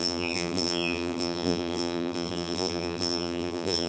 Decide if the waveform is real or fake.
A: fake